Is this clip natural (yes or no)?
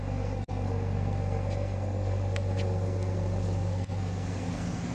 no